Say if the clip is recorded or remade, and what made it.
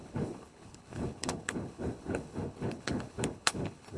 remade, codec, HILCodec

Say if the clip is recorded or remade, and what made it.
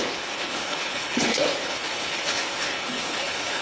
remade, codec, HILCodec